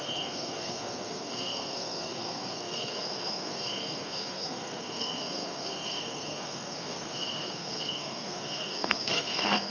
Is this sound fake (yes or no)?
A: yes